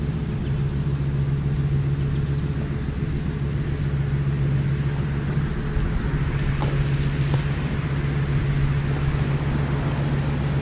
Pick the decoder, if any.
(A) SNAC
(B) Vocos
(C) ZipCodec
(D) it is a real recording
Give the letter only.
D